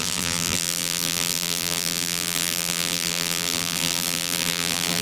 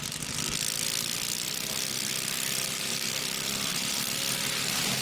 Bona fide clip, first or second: second